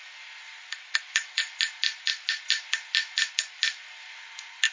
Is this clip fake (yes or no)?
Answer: no